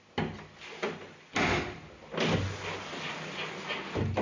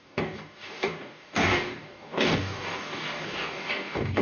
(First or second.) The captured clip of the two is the first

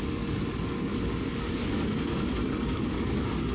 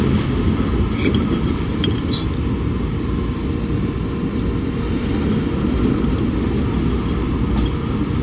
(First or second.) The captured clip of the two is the second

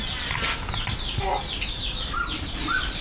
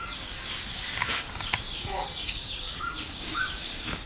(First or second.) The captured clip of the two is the first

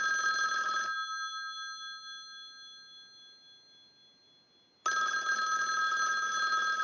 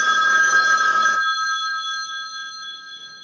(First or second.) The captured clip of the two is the first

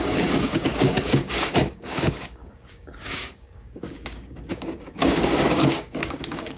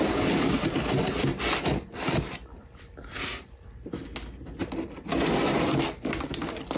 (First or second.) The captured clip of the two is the second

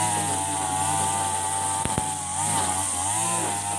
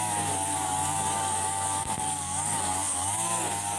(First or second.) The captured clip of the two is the first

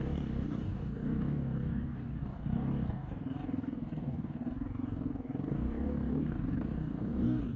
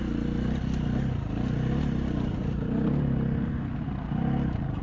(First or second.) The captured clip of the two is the second